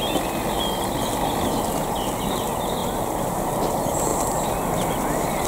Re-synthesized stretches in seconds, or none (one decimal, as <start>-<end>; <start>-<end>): 2.8-3.5